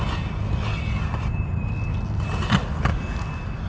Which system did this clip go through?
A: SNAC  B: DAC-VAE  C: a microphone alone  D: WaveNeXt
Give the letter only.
C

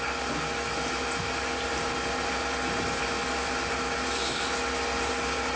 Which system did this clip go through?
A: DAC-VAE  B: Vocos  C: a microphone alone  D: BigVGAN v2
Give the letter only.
C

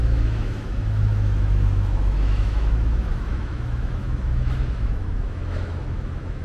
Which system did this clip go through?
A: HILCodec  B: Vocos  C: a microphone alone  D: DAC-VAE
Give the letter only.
D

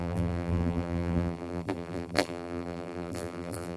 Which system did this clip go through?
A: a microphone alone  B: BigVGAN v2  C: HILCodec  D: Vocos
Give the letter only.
B